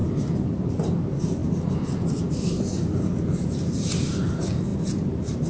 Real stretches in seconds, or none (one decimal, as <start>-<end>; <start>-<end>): 1.4-3.0; 4.7-5.5